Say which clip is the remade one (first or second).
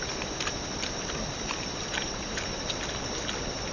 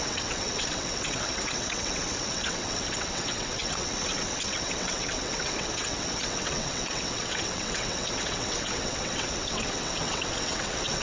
second